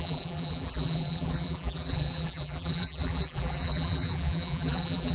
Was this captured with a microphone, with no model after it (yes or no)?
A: no